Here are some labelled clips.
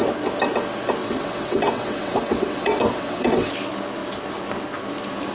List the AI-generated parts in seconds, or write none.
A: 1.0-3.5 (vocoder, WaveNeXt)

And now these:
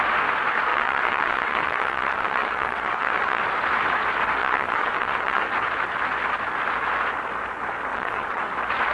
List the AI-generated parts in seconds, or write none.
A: 0.7-3.4 (vocoder, WaveNeXt); 4.4-5.4; 7.9-8.4

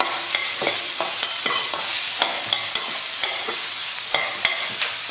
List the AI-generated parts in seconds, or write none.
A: 0.4-1.8 (vocoder, WaveNeXt); 3.2-3.7

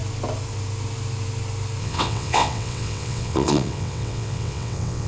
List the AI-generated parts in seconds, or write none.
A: 1.8-5.1 (vocoder, WaveNeXt)